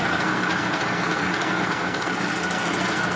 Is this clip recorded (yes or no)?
no